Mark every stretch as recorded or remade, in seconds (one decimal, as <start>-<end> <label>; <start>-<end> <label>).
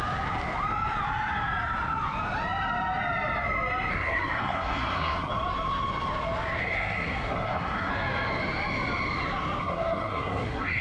0.0-3.9 recorded; 3.9-5.3 remade; 5.3-6.6 recorded; 6.6-7.9 remade; 7.9-9.6 recorded; 9.6-10.8 remade